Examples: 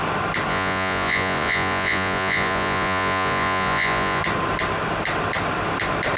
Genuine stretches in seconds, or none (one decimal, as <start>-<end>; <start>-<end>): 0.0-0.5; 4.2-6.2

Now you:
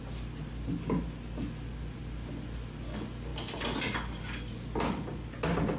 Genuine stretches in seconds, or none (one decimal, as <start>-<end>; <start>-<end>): 0.0-5.8

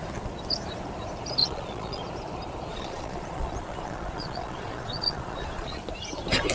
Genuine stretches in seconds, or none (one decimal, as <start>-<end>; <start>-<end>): 0.0-1.4; 2.0-2.7; 5.8-6.5